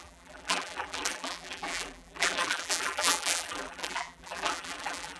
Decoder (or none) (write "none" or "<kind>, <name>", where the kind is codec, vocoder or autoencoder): vocoder, BigVGAN v2